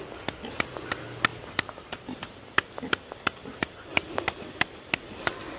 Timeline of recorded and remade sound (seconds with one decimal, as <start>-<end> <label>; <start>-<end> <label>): 0.0-1.3 recorded; 1.3-2.2 remade; 2.2-3.9 recorded; 3.9-4.6 remade; 4.6-5.6 recorded